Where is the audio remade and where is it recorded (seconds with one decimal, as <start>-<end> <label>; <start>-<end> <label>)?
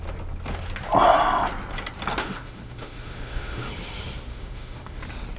0.0-2.2 recorded; 2.2-3.7 remade; 3.7-4.3 recorded; 4.3-5.0 remade; 5.0-5.4 recorded